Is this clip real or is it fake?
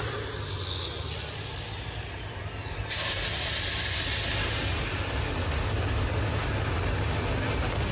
real